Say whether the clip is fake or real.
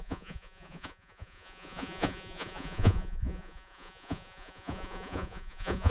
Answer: fake